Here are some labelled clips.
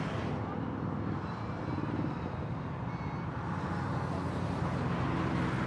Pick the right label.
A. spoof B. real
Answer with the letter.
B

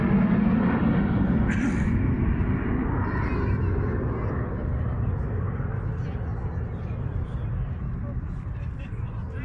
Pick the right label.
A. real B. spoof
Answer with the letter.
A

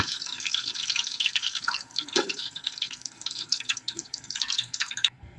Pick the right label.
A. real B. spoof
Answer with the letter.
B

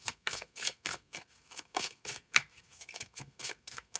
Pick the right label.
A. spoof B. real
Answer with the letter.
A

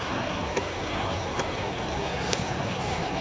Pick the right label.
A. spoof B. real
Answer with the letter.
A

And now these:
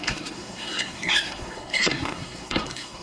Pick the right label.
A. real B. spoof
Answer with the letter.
B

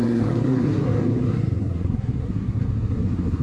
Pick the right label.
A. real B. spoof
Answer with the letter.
B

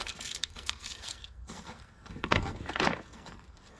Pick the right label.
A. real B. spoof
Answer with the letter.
B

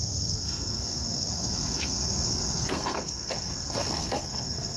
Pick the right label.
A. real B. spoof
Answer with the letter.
B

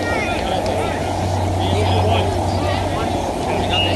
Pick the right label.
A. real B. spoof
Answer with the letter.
A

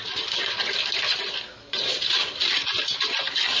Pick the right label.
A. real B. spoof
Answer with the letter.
A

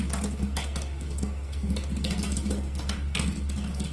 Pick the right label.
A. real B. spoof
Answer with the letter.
B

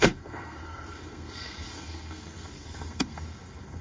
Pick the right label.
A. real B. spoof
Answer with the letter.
B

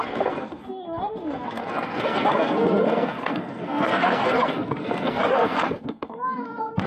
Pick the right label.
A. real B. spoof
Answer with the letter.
B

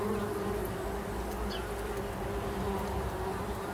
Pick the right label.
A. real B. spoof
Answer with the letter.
A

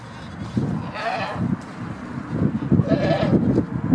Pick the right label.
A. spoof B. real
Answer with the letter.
B